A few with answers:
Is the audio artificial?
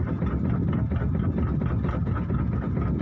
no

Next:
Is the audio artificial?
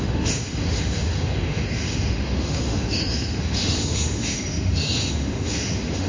yes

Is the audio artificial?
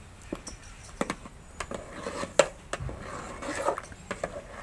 no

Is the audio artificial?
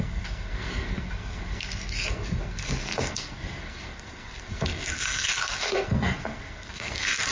yes